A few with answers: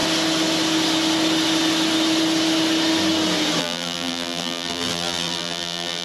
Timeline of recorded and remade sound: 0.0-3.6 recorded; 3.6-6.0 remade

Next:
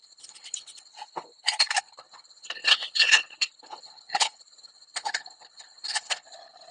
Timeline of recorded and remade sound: 0.0-0.9 remade; 0.9-1.8 recorded; 1.8-6.7 remade

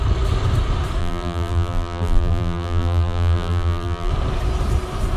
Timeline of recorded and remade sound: 0.0-1.0 recorded; 1.0-4.1 remade; 4.1-5.2 recorded

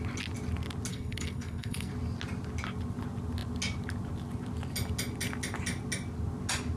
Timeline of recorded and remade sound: 0.0-0.9 recorded; 0.9-1.9 remade; 1.9-6.8 recorded

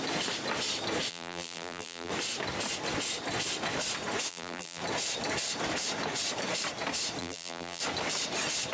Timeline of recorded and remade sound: 0.0-1.1 recorded; 1.1-2.1 remade; 2.1-4.3 recorded; 4.3-4.8 remade; 4.8-7.2 recorded; 7.2-7.8 remade; 7.8-8.7 recorded

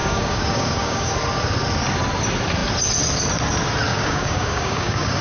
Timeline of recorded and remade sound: 0.0-1.1 remade; 1.1-3.9 recorded; 3.9-5.2 remade

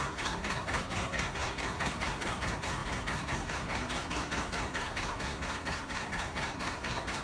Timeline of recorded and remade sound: 0.0-7.2 remade